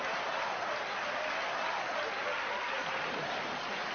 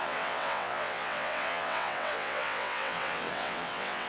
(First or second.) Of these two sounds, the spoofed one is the second